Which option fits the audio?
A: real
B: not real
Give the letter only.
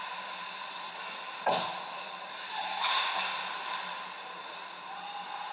A